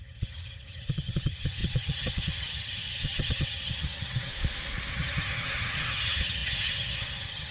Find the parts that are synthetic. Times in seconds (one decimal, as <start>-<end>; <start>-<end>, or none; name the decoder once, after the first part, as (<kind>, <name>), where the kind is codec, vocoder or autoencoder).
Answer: 0.0-4.3 (vocoder, HiFi-GAN); 4.9-7.5